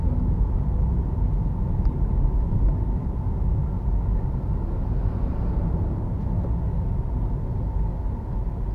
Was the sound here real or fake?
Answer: real